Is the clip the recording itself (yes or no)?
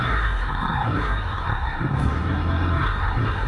no